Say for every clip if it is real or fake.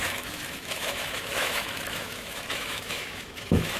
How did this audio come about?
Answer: fake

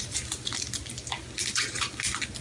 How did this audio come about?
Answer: real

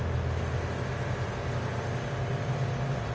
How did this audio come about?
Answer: real